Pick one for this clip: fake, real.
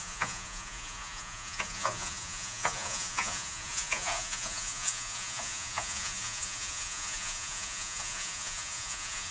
fake